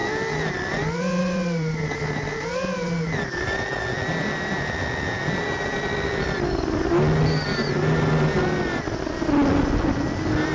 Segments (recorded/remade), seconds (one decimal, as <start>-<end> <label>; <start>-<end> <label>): 0.0-10.5 recorded